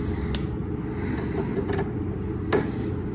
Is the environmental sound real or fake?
real